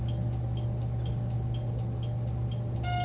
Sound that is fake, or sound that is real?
real